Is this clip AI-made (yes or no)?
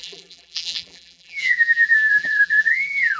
yes